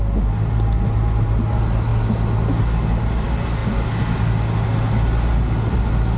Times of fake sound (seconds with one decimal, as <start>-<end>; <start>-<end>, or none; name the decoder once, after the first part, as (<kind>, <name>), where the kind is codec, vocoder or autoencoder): none